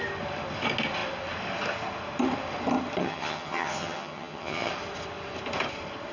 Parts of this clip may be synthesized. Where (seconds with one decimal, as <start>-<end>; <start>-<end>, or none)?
3.0-4.7